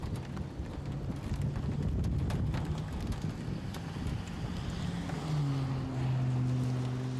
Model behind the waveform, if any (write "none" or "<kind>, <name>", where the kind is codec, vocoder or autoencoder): none